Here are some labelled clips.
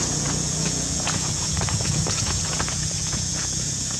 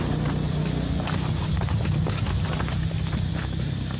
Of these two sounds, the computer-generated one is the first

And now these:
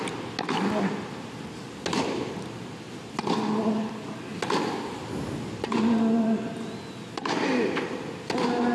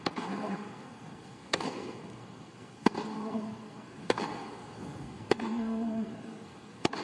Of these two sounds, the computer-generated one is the second